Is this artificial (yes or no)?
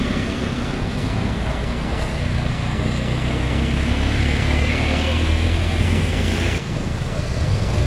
yes